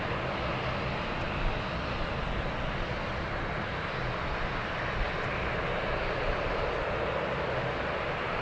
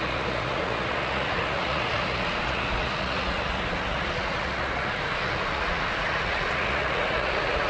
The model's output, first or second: second